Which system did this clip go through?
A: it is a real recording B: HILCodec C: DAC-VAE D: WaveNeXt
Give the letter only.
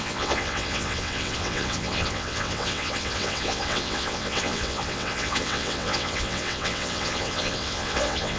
D